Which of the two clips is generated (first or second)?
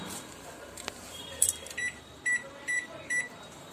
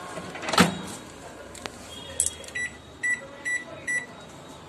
first